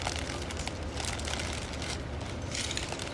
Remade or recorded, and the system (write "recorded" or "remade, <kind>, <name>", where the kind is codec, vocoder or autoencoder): recorded